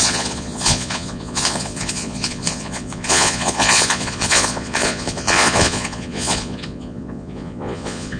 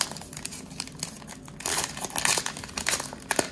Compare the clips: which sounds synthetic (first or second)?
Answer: first